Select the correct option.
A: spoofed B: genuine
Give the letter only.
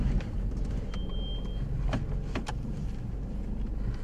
B